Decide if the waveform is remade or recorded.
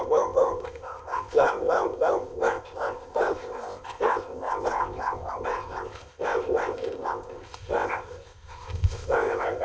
remade